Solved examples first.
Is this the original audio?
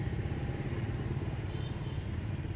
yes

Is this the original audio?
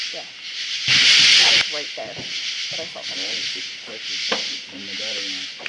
yes